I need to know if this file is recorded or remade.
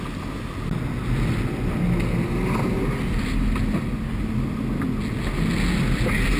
recorded